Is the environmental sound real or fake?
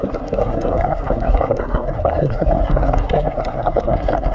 fake